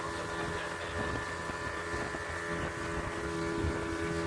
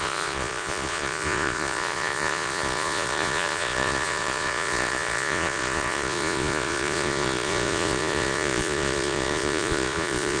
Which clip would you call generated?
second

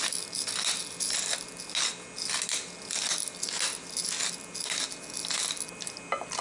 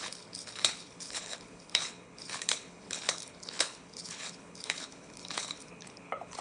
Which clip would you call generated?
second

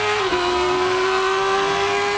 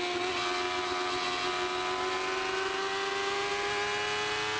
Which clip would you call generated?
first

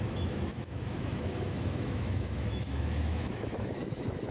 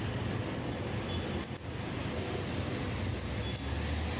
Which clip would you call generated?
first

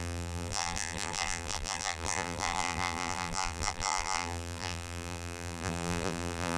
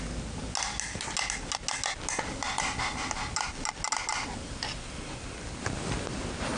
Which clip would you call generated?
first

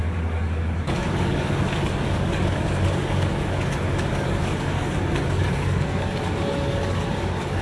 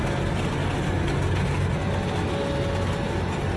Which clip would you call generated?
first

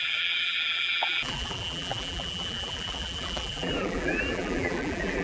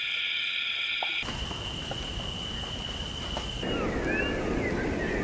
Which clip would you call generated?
first